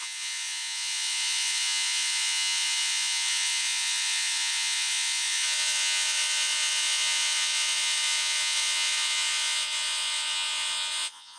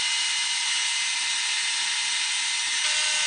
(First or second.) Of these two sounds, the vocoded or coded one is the first